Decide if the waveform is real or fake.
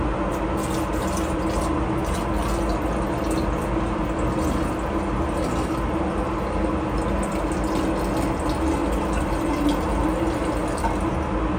real